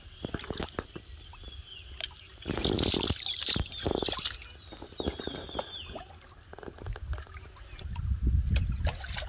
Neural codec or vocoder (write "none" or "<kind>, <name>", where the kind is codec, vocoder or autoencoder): none